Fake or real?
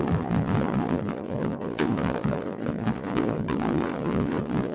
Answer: fake